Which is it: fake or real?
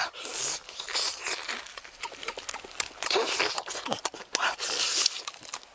real